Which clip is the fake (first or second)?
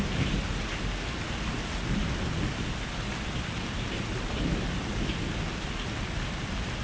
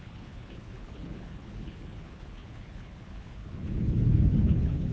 second